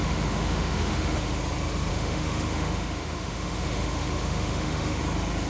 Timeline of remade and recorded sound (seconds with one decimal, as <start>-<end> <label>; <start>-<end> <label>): 0.0-1.4 remade; 1.4-1.9 recorded; 1.9-5.0 remade; 5.0-5.5 recorded